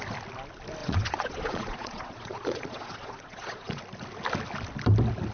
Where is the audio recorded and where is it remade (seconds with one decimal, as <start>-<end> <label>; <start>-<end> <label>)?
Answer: 0.0-0.8 recorded; 0.8-3.8 remade; 3.8-5.3 recorded